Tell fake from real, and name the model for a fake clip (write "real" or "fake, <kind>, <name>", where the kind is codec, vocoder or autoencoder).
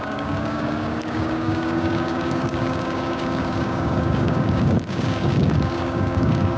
fake, codec, DAC